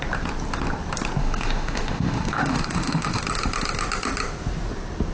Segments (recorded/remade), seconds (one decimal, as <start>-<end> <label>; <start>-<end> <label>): 0.0-1.2 recorded; 1.2-3.2 remade; 3.2-5.1 recorded